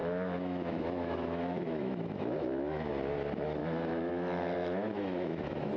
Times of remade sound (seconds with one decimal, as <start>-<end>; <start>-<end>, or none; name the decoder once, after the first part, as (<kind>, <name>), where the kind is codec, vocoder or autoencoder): 0.0-2.9 (autoencoder, DAC-VAE); 3.6-4.1; 4.6-5.8